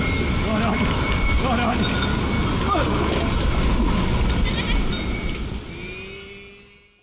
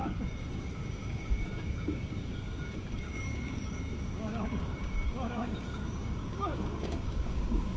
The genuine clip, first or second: first